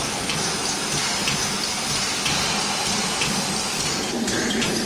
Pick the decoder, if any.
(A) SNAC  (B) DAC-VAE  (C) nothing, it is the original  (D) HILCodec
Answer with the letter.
C